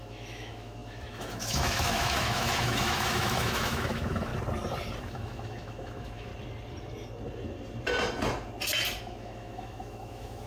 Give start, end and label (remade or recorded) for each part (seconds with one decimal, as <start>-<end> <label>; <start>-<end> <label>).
0.0-4.3 remade; 4.3-5.0 recorded; 5.0-6.3 remade; 6.3-9.0 recorded; 9.0-10.5 remade